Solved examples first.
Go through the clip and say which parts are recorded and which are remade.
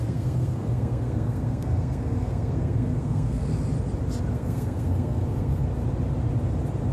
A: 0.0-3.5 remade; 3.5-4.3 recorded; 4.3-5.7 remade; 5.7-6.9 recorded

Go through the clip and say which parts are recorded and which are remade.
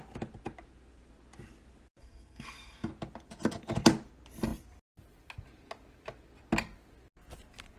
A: 0.0-2.0 recorded; 2.0-2.9 remade; 2.9-7.8 recorded